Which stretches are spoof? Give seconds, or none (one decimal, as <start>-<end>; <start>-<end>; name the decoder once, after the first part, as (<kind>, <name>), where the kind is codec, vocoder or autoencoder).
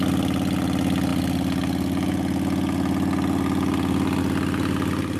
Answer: none